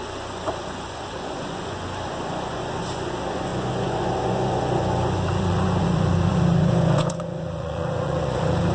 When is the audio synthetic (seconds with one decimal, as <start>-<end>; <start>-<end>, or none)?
0.0-8.7